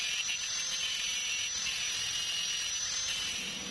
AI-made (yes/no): no